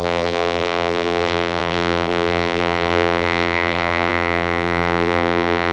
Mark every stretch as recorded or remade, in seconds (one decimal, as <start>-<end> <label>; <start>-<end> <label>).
0.0-5.7 remade